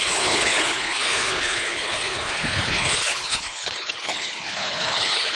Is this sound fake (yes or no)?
yes